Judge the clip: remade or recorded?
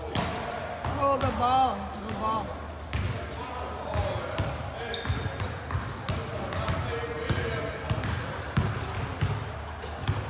recorded